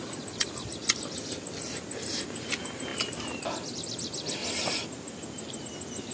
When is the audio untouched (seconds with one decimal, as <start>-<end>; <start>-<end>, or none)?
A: 0.0-6.1